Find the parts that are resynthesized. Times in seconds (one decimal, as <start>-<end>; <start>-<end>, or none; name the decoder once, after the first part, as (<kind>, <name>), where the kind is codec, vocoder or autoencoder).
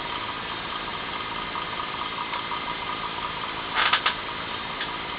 none